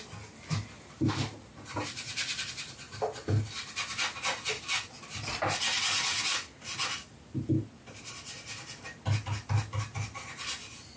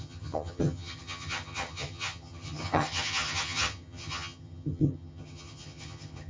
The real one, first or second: first